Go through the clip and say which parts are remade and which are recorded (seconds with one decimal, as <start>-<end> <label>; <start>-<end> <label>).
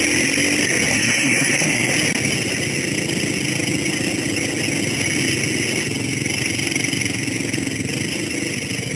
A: 0.0-0.9 recorded; 0.9-1.9 remade; 1.9-9.0 recorded